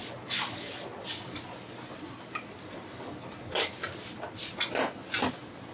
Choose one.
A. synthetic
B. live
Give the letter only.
B